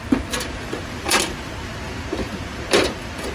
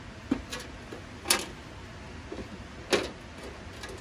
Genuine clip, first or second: second